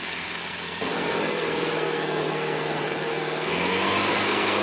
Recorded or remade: remade